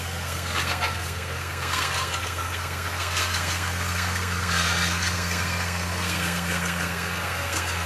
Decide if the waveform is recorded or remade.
remade